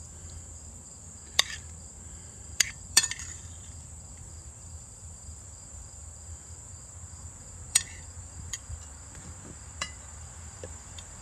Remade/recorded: remade